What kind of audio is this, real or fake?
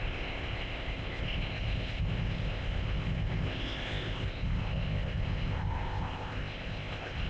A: fake